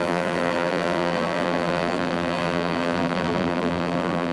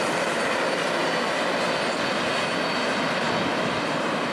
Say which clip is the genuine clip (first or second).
second